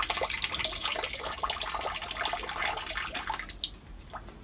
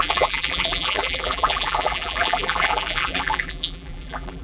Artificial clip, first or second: second